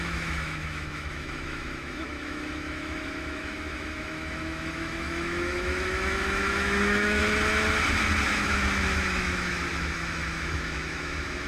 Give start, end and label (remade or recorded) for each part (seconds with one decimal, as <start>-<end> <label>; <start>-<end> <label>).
0.0-7.2 remade; 7.2-8.3 recorded; 8.3-11.5 remade